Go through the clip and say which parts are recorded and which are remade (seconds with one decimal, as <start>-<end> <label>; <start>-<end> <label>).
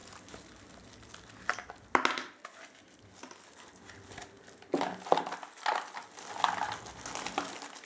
0.0-7.9 recorded